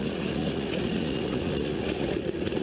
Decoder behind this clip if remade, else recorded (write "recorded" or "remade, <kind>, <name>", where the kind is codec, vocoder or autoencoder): remade, vocoder, Vocos